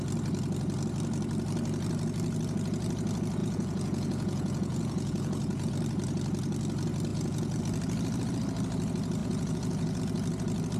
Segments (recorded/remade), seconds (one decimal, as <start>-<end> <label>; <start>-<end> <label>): 0.0-3.4 recorded; 3.4-5.7 remade; 5.7-7.1 recorded; 7.1-7.6 remade; 7.6-9.2 recorded; 9.2-10.0 remade; 10.0-10.8 recorded